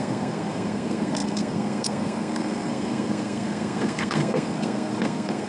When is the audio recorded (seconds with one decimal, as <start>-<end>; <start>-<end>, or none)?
none